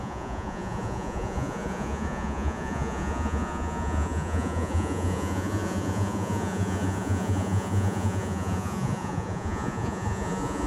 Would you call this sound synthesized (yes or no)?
yes